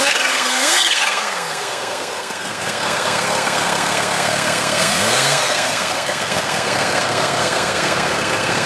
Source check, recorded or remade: remade